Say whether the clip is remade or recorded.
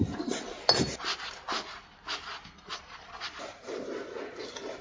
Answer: recorded